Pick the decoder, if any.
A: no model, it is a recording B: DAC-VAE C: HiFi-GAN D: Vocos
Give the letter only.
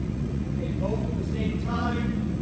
D